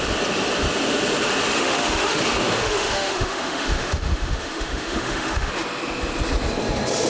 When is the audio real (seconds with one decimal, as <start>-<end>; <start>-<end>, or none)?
0.0-1.5; 2.2-2.6; 5.5-7.1